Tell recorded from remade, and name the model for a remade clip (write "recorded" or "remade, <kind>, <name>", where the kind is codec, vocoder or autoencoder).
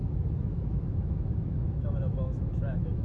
remade, autoencoder, DAC-VAE